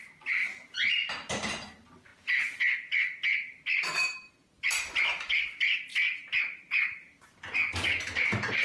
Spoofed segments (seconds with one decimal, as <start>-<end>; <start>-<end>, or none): none

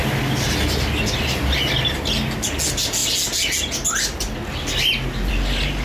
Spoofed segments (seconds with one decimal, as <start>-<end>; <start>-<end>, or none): none

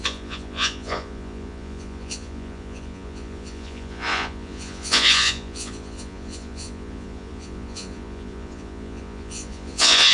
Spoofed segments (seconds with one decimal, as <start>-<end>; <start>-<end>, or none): 0.0-10.1